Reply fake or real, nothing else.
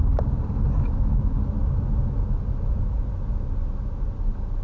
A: real